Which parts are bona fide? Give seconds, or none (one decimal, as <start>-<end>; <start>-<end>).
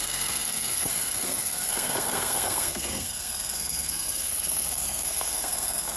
none